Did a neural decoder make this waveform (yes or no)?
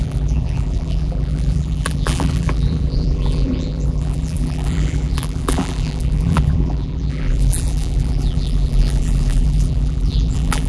yes